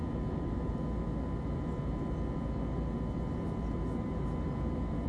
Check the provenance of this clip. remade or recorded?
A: recorded